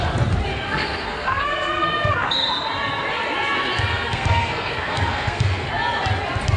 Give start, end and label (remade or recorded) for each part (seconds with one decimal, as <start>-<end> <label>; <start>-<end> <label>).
0.0-0.5 recorded; 0.5-2.5 remade; 2.5-3.9 recorded; 3.9-5.7 remade; 5.7-6.6 recorded